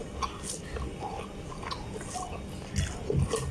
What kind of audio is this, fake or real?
real